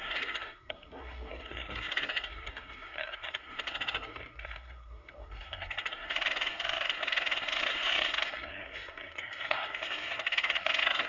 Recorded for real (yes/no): no